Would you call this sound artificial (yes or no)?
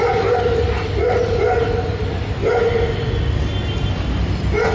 no